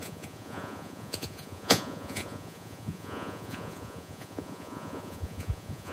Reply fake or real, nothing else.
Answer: fake